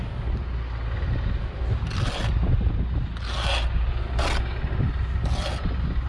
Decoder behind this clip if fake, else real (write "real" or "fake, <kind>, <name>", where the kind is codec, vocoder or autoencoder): real